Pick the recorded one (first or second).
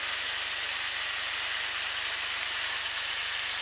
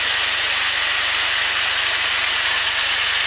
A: first